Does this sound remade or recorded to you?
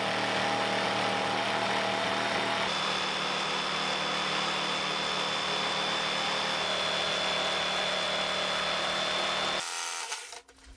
recorded